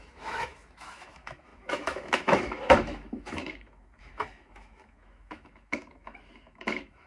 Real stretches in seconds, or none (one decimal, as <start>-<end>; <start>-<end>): none